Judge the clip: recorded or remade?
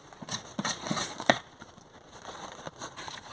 remade